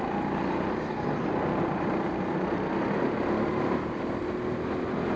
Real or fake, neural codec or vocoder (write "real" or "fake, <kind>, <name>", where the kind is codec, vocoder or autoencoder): real